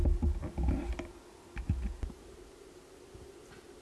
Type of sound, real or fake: real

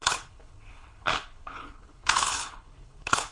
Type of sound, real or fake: fake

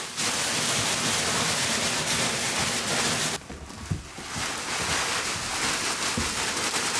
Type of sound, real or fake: real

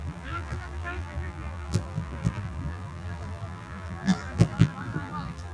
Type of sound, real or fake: fake